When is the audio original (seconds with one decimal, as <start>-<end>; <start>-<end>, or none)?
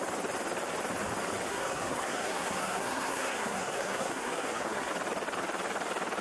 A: 0.0-1.5; 4.9-6.2